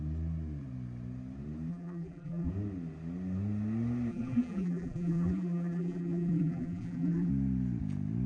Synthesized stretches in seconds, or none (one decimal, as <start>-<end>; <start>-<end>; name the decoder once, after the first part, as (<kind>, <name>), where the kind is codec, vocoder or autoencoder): 1.7-2.5 (vocoder, BigVGAN v2); 4.1-7.3